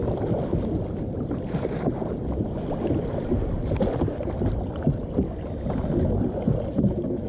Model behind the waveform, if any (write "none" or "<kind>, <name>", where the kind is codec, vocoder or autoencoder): none